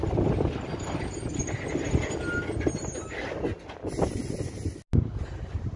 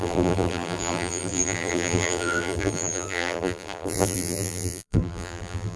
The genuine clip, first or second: first